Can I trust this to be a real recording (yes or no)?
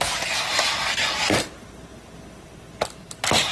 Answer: yes